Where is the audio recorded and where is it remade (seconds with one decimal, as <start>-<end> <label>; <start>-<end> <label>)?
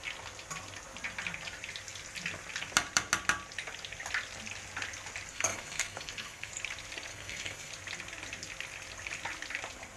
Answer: 0.0-5.3 recorded; 5.3-6.5 remade; 6.5-7.1 recorded; 7.1-7.7 remade; 7.7-10.0 recorded